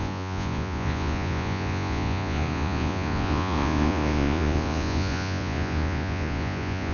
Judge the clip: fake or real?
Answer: fake